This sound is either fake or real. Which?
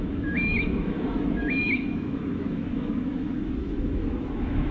fake